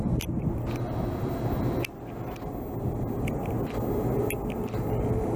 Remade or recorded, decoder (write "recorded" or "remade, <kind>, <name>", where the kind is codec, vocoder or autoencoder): recorded